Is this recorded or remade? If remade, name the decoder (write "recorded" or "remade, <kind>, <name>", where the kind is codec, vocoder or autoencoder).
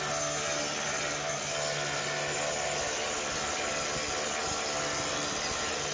recorded